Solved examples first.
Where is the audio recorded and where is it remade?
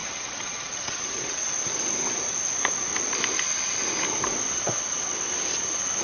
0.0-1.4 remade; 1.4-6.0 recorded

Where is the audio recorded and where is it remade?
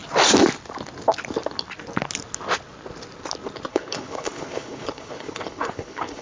0.0-3.7 recorded; 3.7-6.2 remade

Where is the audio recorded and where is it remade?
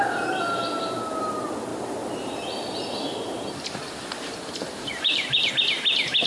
0.0-1.7 recorded; 1.7-5.5 remade; 5.5-6.3 recorded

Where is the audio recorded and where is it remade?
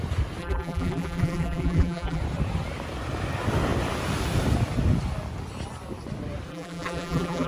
0.0-0.4 recorded; 0.4-2.2 remade; 2.2-6.5 recorded; 6.5-7.5 remade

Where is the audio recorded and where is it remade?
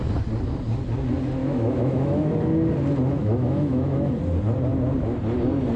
0.0-1.4 recorded; 1.4-2.3 remade; 2.3-3.2 recorded; 3.2-4.1 remade; 4.1-5.8 recorded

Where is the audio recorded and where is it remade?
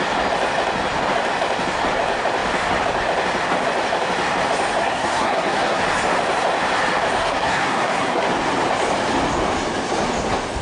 0.0-4.8 recorded; 4.8-5.8 remade; 5.8-7.2 recorded; 7.2-8.2 remade; 8.2-10.6 recorded